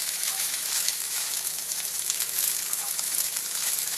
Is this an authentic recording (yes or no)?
no